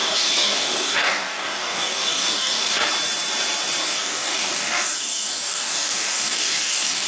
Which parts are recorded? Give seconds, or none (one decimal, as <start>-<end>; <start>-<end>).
2.9-3.8